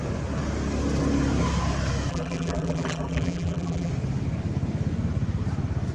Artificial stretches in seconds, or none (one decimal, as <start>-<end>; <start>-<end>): 2.1-3.9

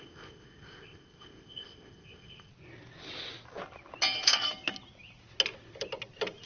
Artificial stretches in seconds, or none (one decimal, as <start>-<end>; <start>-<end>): 0.0-2.5

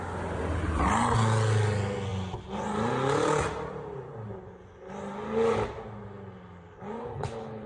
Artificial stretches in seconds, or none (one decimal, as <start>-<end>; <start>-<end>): 7.0-7.7

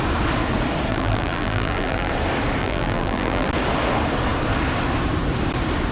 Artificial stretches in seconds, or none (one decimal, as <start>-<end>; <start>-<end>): 0.9-2.1; 2.6-3.5

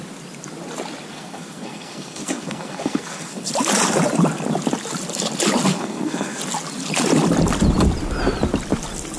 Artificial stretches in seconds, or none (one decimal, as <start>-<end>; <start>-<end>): 1.1-3.5; 5.7-6.4

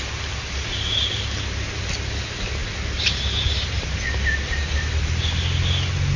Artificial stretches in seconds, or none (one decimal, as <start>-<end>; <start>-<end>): none

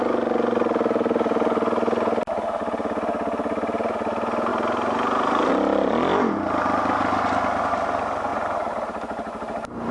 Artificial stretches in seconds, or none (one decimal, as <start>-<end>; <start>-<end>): 4.5-5.5; 8.3-9.9